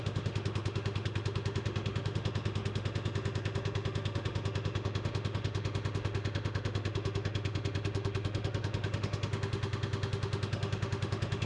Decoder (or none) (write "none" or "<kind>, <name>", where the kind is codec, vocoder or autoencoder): autoencoder, DAC-VAE